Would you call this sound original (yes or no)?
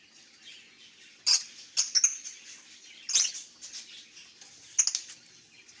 yes